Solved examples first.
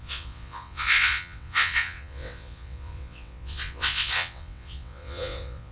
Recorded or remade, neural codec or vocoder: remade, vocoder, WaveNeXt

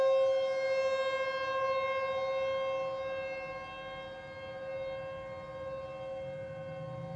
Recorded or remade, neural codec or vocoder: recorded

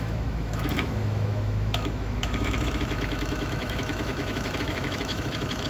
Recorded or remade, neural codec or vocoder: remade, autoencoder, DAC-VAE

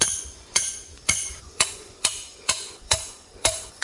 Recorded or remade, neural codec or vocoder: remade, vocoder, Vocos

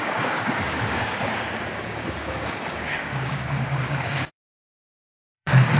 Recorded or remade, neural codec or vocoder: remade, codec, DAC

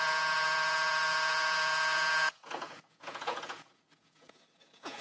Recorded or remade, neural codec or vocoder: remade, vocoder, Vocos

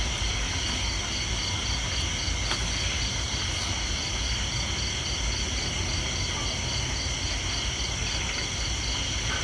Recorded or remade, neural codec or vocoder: recorded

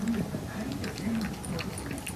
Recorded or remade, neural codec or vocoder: recorded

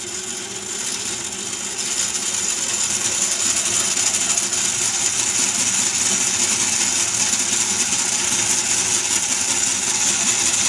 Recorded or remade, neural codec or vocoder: recorded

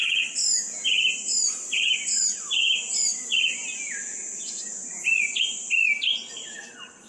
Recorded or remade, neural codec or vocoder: recorded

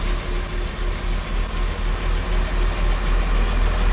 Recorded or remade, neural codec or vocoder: recorded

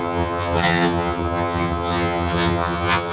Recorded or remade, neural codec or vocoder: remade, vocoder, HiFi-GAN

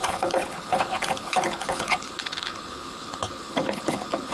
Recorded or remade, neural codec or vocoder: remade, codec, HILCodec